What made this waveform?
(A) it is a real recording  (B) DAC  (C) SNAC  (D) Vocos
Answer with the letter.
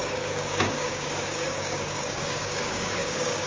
B